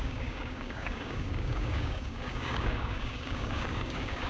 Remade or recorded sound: remade